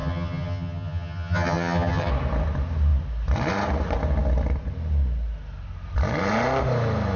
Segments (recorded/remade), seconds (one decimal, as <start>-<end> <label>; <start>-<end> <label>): 0.0-2.1 remade; 2.1-7.2 recorded